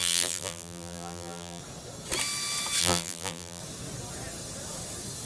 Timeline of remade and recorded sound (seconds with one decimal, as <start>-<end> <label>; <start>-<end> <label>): 0.0-1.6 remade; 1.6-2.8 recorded; 2.8-3.6 remade; 3.6-5.3 recorded